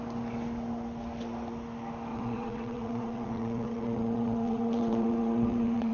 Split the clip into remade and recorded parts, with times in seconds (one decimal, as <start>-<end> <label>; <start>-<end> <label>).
0.0-2.1 recorded; 2.1-5.9 remade